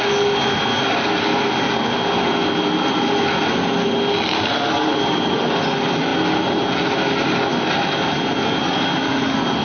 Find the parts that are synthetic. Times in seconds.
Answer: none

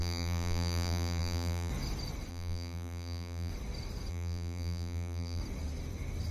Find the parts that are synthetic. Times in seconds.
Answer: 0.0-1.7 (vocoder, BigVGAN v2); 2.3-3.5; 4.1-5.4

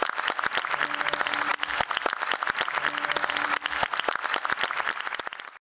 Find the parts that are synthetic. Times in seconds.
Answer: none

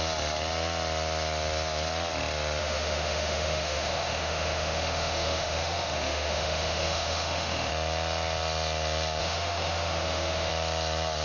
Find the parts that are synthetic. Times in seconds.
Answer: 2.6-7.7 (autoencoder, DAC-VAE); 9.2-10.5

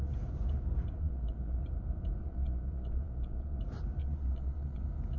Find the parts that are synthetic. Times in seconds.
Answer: 1.0-1.6 (vocoder, Vocos); 2.2-3.6; 4.0-4.8

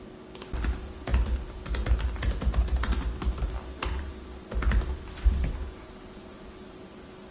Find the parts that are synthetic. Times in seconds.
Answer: none

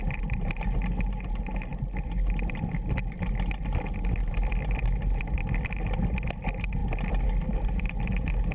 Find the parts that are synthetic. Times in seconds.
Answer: none